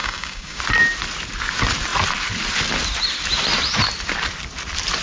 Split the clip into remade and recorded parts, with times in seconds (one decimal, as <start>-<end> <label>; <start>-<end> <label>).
0.0-0.6 remade; 0.6-5.0 recorded